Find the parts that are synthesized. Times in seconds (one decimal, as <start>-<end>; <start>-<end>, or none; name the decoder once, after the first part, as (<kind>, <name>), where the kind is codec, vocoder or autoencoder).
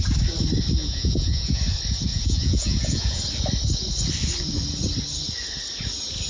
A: 0.8-1.6 (vocoder, Vocos); 2.1-3.2